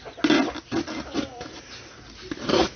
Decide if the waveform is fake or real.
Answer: real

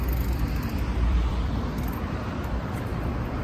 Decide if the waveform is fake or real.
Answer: fake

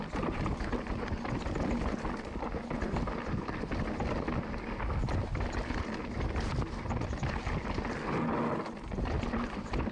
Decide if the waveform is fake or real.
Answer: real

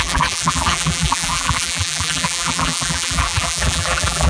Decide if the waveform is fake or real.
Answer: fake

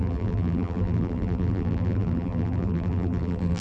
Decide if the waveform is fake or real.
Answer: fake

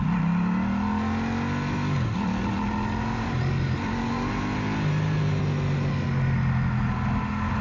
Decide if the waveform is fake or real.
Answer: real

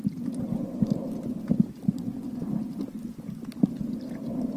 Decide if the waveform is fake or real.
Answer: real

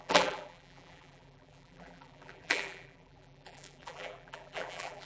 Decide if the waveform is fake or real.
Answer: fake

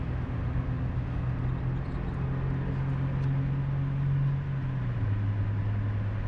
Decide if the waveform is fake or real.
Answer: real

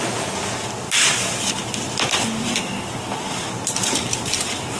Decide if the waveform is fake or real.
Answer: real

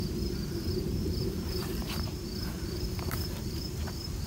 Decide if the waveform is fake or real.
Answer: fake